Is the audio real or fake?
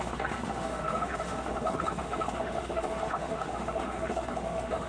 fake